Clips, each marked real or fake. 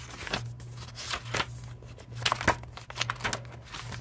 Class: real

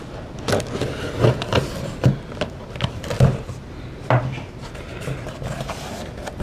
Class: real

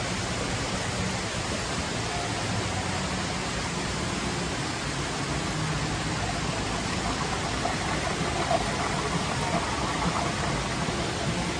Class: real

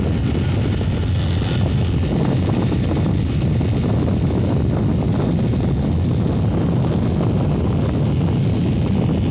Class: real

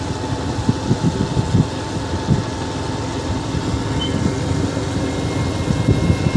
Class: real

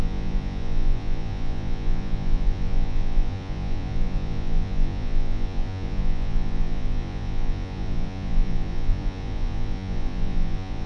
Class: fake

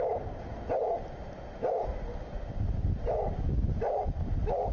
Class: real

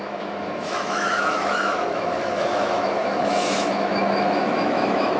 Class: fake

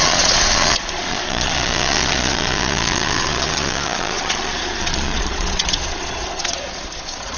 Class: fake